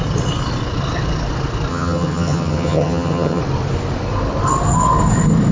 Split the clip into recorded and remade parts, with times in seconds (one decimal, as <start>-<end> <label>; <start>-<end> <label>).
0.0-1.7 recorded; 1.7-3.4 remade; 3.4-5.5 recorded